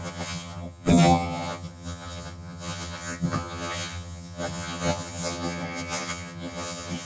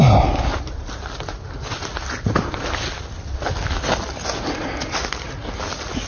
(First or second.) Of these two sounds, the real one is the second